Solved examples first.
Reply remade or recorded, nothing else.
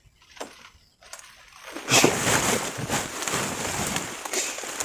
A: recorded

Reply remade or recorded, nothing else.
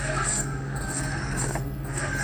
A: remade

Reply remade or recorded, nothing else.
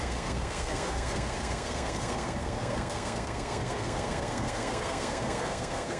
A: remade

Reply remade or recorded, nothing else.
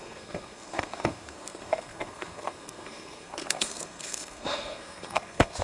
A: remade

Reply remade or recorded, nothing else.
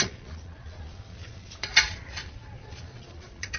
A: remade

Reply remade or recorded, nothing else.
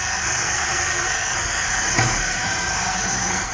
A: remade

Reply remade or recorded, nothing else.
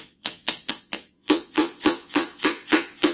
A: remade